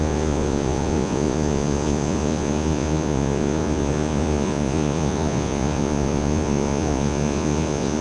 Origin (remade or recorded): remade